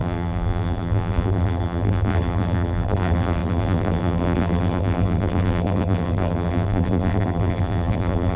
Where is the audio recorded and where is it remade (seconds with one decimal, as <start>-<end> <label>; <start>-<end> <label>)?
0.0-8.4 remade